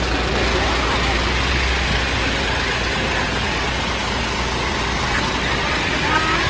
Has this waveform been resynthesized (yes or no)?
no